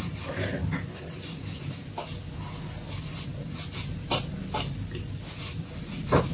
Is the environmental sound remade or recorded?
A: recorded